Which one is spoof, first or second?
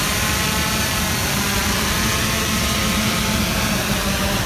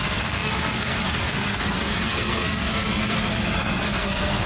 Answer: second